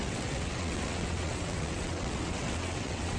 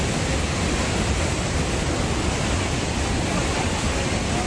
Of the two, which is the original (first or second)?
second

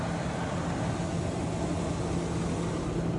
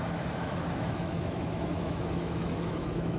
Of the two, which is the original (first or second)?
first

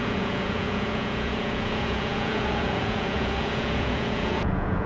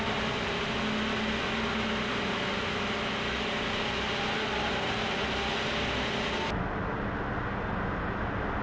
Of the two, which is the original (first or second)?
second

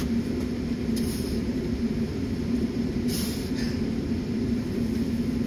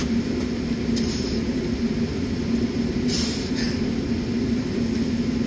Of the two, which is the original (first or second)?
second